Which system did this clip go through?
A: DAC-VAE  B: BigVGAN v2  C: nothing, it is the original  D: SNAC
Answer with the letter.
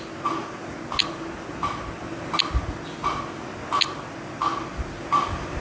C